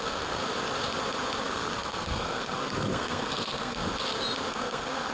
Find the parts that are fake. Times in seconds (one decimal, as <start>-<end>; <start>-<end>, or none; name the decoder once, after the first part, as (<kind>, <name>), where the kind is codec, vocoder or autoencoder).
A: 0.0-0.4 (codec, SNAC); 1.4-3.8; 4.5-5.1